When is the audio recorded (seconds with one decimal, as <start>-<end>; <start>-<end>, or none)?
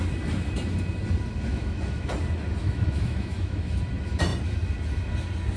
0.0-1.5; 2.1-2.6; 3.8-5.6